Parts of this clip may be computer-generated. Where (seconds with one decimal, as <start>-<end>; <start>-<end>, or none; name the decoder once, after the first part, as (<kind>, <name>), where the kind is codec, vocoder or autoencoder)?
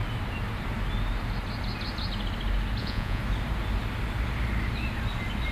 2.8-3.2 (vocoder, Vocos)